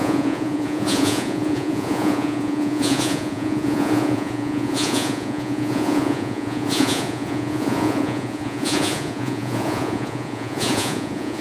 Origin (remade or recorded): remade